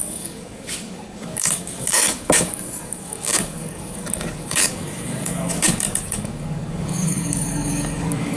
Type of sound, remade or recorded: remade